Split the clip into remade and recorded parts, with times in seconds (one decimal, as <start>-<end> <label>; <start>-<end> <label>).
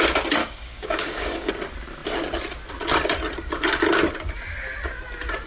0.0-0.4 recorded; 0.4-1.5 remade; 1.5-5.5 recorded